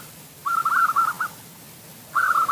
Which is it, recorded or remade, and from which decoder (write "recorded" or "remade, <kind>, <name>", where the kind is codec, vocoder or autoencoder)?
recorded